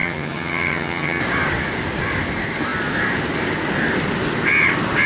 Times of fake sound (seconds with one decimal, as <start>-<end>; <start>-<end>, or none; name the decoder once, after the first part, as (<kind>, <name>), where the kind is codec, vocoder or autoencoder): 0.0-1.2 (vocoder, HiFi-GAN)